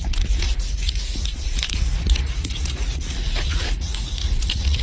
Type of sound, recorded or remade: remade